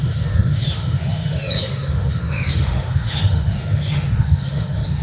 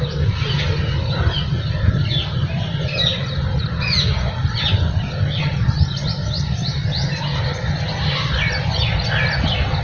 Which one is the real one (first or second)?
second